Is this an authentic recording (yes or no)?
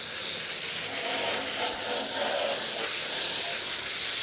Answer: yes